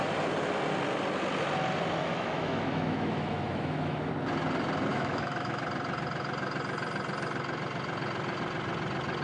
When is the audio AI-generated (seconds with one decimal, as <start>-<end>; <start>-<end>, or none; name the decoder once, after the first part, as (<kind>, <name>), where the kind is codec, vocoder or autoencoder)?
2.0-4.1 (autoencoder, DAC-VAE); 4.9-5.6